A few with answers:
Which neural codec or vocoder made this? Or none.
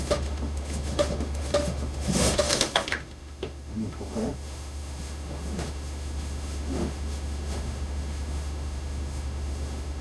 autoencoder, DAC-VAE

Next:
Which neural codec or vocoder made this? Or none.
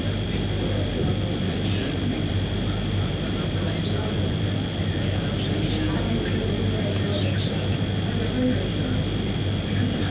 none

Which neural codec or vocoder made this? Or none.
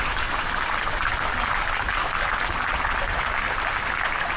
none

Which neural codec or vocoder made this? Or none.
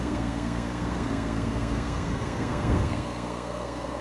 codec, SNAC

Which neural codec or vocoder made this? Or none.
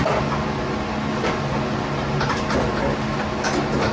none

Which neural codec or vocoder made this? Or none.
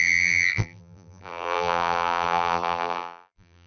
vocoder, BigVGAN v2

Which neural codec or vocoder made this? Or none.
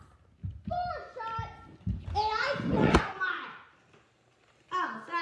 none